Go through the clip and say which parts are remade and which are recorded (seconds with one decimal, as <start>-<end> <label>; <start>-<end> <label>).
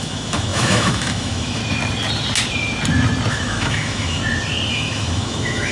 0.0-1.6 remade; 1.6-3.3 recorded; 3.3-4.2 remade; 4.2-4.7 recorded; 4.7-5.7 remade